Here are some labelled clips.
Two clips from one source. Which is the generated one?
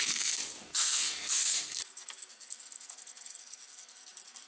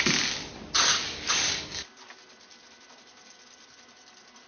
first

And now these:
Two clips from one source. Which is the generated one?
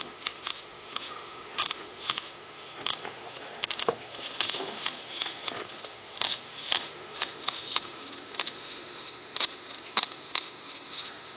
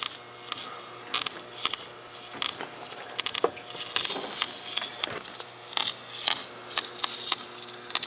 first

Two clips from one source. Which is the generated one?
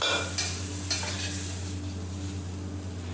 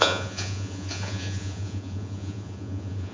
second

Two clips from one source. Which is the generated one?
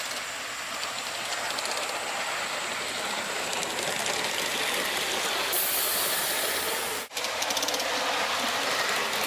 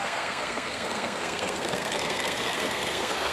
second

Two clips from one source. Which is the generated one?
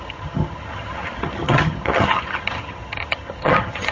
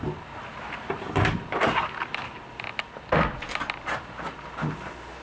first